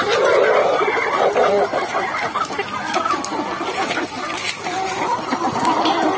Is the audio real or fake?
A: real